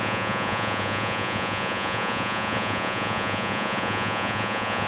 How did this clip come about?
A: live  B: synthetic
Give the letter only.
B